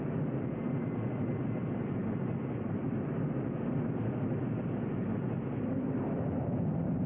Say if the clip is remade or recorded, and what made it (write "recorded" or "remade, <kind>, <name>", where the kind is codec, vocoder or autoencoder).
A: recorded